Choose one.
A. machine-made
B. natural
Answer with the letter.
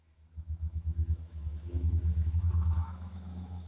A